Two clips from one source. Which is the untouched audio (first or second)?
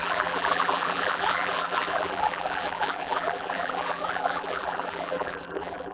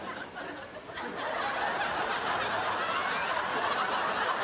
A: second